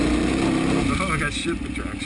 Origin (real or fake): real